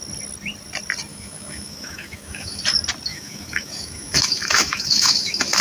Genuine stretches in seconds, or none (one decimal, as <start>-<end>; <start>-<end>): 0.0-1.1; 2.6-3.1